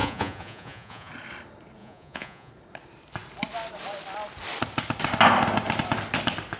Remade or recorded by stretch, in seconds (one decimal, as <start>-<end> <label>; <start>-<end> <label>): 0.0-1.1 remade; 1.1-1.8 recorded; 1.8-2.5 remade; 2.5-6.6 recorded